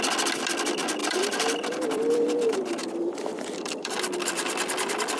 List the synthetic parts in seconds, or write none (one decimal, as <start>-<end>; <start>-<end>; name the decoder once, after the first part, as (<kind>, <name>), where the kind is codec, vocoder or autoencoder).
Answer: 1.0-3.9 (vocoder, BigVGAN v2)